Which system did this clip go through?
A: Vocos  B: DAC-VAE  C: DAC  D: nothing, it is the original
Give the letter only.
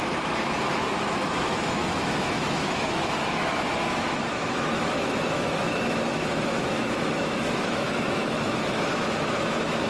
B